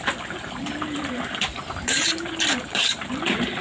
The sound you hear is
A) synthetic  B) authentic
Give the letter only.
A